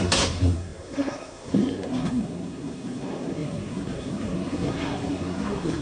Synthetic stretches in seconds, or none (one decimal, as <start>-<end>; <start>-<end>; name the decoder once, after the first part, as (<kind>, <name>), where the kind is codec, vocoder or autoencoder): 0.0-5.8 (codec, SNAC)